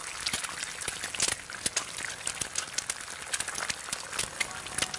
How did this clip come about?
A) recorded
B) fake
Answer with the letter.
A